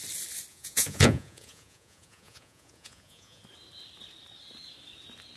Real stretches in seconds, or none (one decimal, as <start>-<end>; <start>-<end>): 0.0-0.5; 3.4-5.4